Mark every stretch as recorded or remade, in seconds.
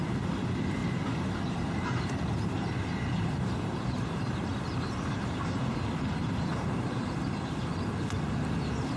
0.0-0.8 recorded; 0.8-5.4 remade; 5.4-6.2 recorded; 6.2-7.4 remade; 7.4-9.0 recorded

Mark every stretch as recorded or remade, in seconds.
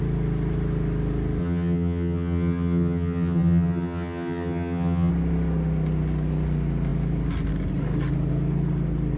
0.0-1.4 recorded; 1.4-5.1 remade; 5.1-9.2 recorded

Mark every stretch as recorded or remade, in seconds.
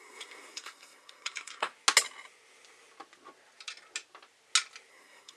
0.0-1.7 remade; 1.7-4.9 recorded; 4.9-5.4 remade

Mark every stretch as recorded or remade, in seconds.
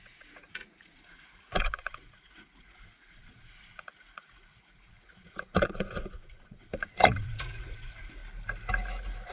0.0-8.2 remade; 8.2-9.3 recorded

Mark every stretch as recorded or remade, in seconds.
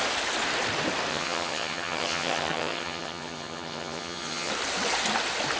0.0-1.1 recorded; 1.1-4.5 remade; 4.5-5.6 recorded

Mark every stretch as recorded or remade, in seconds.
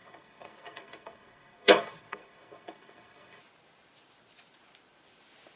0.0-3.4 remade; 3.4-5.6 recorded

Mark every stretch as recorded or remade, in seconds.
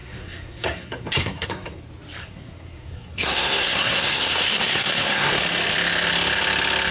0.0-1.8 remade; 1.8-2.2 recorded; 2.2-5.4 remade; 5.4-6.9 recorded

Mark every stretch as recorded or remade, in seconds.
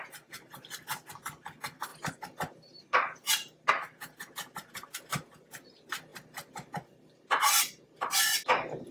0.0-8.9 recorded